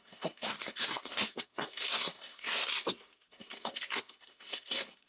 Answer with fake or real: fake